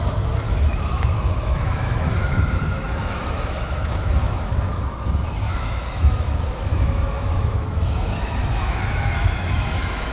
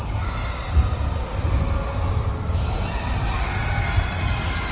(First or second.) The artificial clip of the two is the first